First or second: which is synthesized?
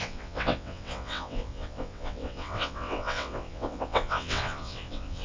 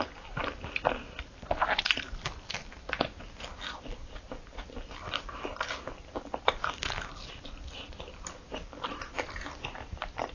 first